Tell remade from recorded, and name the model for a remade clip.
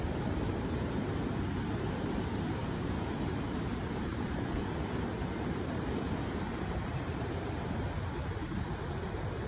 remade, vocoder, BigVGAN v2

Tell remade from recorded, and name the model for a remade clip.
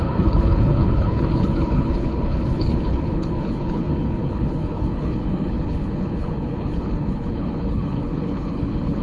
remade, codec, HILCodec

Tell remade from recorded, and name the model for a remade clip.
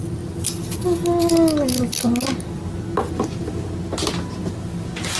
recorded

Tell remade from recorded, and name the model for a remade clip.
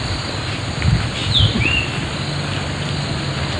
recorded